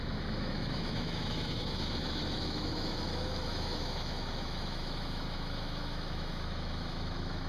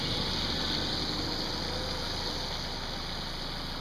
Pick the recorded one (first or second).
second